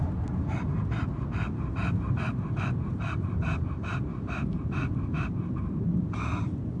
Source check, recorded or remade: remade